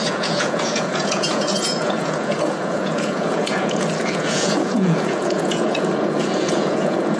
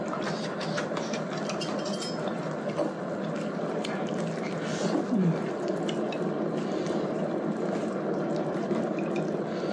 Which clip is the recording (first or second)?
second